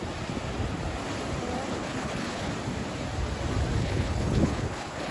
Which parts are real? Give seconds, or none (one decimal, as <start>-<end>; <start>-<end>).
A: 0.0-1.7; 2.5-3.8